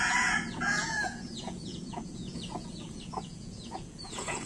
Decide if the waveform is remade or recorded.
remade